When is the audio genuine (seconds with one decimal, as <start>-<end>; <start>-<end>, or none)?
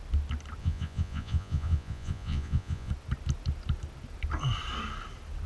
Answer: 0.0-0.6; 2.9-5.5